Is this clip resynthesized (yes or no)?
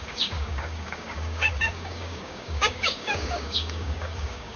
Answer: yes